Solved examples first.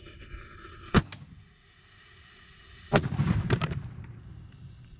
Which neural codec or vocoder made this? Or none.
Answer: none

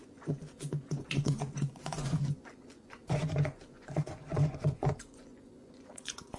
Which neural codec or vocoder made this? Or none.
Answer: vocoder, Vocos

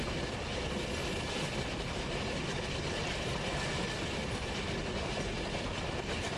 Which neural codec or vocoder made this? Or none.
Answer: none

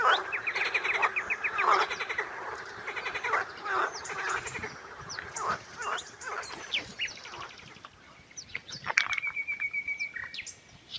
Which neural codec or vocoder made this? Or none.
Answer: none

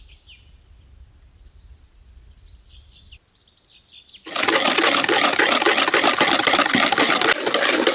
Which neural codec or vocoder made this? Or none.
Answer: none